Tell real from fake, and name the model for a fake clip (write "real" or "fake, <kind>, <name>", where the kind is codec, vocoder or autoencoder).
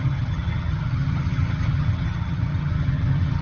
fake, vocoder, HiFi-GAN